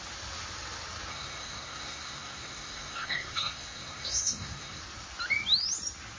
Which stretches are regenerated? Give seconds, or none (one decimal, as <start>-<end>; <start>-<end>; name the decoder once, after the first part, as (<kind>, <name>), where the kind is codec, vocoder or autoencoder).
1.1-4.8 (codec, SNAC)